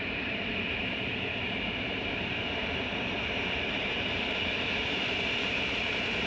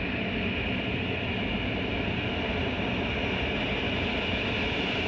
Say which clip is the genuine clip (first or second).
second